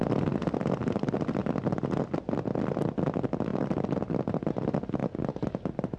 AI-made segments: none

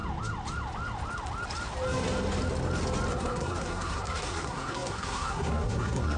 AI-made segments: 3.1-6.2 (codec, SNAC)

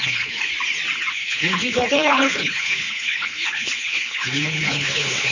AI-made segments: 0.0-0.5 (codec, HILCodec); 1.1-5.3

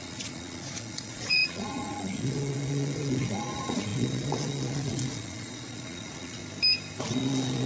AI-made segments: 0.0-6.4 (vocoder, Vocos); 7.0-7.7

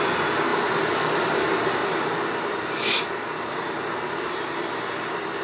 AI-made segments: none

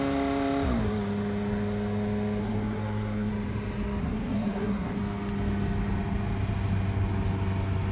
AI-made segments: 2.4-3.3 (codec, SNAC); 4.0-5.0

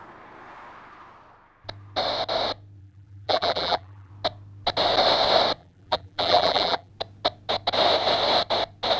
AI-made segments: 2.8-4.1 (vocoder, BigVGAN v2); 5.6-6.9